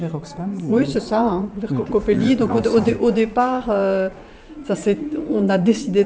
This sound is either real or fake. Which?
fake